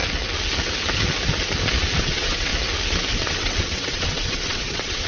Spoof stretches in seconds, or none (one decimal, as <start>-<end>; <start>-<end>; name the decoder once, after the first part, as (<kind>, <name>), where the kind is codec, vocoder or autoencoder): 2.0-2.5 (vocoder, WaveNeXt); 3.2-5.1